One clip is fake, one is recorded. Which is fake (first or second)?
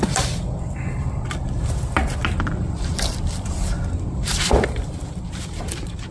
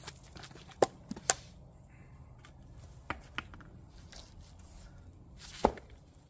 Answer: first